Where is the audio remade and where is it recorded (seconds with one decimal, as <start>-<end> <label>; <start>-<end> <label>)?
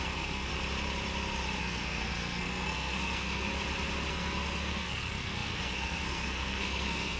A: 0.0-0.5 remade; 0.5-1.6 recorded; 1.6-3.5 remade; 3.5-4.1 recorded; 4.1-7.2 remade